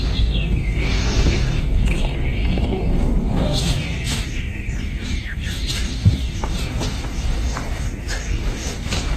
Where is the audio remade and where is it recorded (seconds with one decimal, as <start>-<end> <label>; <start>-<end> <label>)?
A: 0.0-9.2 remade